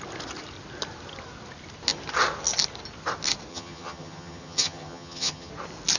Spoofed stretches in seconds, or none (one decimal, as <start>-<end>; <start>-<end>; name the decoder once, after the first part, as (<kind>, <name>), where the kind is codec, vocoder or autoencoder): 3.5-5.5 (vocoder, HiFi-GAN)